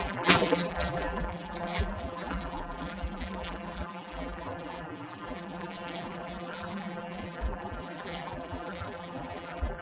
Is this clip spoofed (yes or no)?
yes